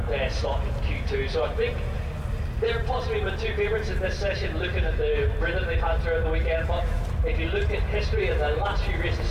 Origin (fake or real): real